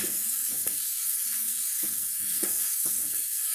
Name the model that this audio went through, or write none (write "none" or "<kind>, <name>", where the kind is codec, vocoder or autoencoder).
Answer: codec, SNAC